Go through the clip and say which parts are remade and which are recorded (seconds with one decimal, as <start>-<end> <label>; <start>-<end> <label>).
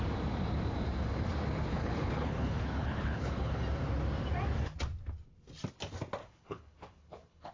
0.0-1.7 recorded; 1.7-3.6 remade; 3.6-6.2 recorded; 6.2-7.5 remade